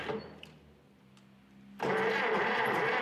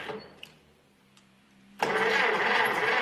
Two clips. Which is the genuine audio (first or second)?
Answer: first